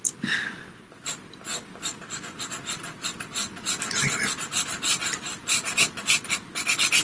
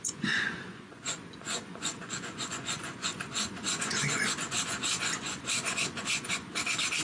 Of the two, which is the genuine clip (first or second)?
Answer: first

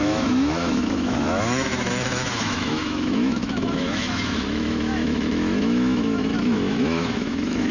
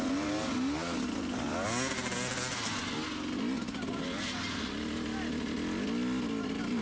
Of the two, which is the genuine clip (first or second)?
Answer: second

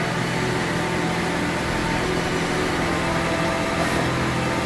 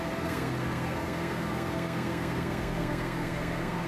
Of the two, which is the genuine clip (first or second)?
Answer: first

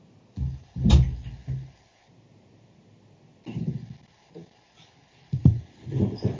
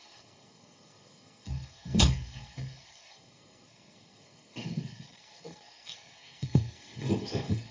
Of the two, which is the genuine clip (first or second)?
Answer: first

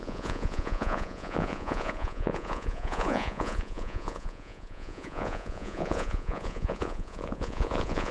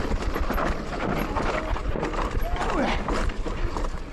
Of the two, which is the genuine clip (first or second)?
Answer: second